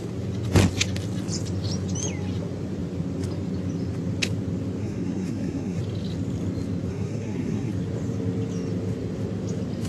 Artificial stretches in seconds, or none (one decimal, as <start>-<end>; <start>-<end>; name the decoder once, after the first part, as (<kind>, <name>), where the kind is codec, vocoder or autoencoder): 4.8-5.8 (codec, SNAC); 6.9-7.7